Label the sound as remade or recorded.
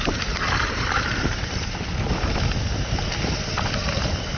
recorded